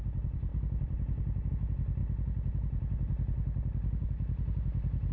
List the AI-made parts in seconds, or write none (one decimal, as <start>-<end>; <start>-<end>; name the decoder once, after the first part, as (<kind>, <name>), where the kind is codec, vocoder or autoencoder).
none